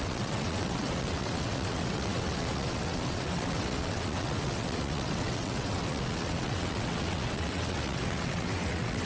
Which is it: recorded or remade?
remade